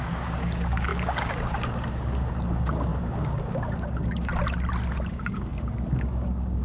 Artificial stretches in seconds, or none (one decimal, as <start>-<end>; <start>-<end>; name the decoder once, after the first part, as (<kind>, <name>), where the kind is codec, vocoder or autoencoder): 0.0-4.3 (codec, DAC); 5.1-6.6